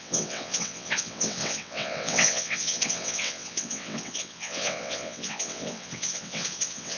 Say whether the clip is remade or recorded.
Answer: remade